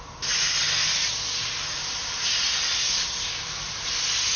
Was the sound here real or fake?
real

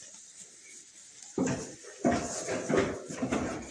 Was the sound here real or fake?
real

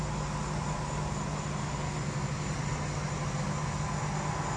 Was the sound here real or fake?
real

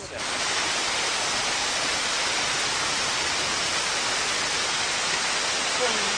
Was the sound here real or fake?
real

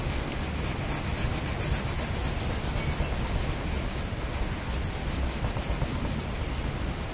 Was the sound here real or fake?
real